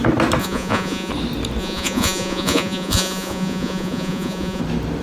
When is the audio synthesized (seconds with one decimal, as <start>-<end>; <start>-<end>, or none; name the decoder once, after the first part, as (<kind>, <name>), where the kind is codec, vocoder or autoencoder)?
0.4-1.1 (vocoder, Vocos); 1.6-4.6

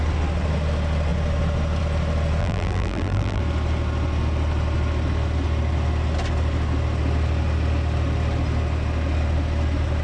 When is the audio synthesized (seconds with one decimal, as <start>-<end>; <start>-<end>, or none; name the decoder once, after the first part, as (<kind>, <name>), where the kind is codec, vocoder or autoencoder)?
2.4-3.4 (vocoder, BigVGAN v2)

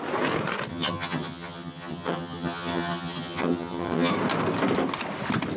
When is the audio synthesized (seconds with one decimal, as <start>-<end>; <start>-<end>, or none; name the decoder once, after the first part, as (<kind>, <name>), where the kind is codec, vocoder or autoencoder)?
0.7-4.1 (vocoder, HiFi-GAN)

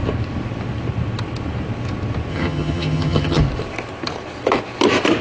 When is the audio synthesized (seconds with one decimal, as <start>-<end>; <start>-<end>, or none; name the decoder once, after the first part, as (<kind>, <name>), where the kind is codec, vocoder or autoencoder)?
2.3-3.4 (vocoder, HiFi-GAN)